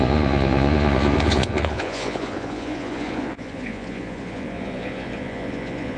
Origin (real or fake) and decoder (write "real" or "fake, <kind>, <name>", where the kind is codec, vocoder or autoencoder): fake, vocoder, Vocos